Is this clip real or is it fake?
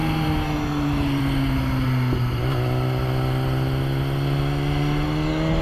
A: real